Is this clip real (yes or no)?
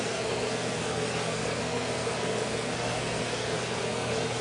no